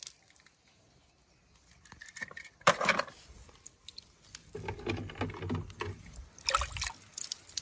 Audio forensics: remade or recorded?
recorded